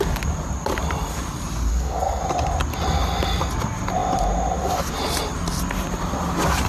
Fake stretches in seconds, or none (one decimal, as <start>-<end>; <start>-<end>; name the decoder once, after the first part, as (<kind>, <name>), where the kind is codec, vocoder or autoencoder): 1.7-2.2 (codec, SNAC)